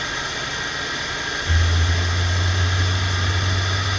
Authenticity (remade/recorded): recorded